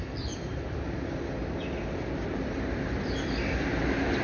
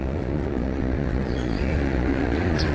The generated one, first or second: second